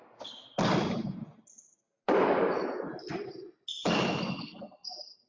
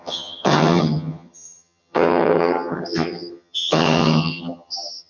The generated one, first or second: second